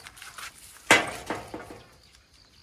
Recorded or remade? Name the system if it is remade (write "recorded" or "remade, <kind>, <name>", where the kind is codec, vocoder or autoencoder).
recorded